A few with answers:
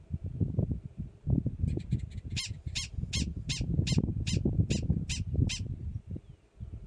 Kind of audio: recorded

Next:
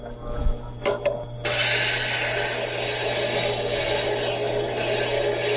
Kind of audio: recorded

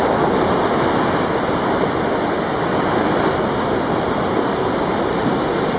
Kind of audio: recorded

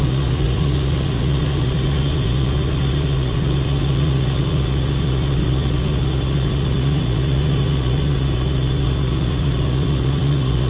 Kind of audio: remade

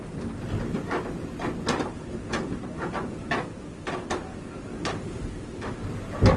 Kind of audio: recorded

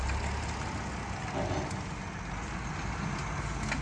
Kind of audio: recorded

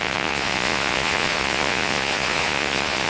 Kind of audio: remade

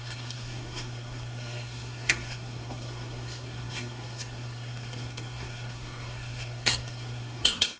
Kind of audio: remade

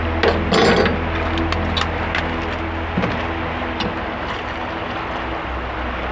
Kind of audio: recorded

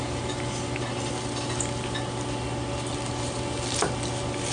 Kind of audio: recorded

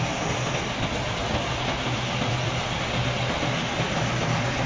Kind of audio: recorded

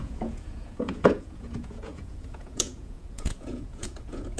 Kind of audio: remade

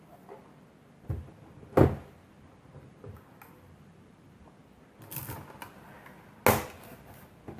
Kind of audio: recorded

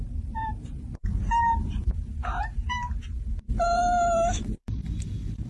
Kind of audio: remade